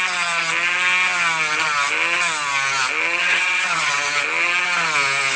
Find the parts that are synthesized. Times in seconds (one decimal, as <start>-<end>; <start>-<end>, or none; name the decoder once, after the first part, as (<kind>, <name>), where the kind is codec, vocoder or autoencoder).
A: 3.2-3.9 (vocoder, HiFi-GAN)